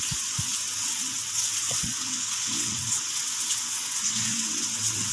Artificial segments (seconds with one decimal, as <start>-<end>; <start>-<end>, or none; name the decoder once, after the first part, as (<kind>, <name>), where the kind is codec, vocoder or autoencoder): 0.0-5.1 (vocoder, WaveNeXt)